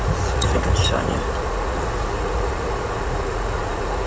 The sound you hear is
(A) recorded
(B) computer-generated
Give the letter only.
B